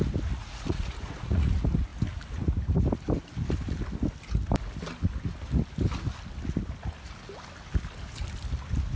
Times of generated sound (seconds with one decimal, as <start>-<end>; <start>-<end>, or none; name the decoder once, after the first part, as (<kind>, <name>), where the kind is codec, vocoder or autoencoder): 0.4-1.5 (vocoder, Vocos)